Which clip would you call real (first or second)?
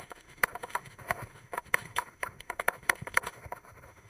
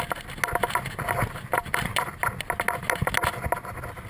second